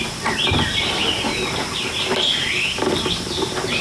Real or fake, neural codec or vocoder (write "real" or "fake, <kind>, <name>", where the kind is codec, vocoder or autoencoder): real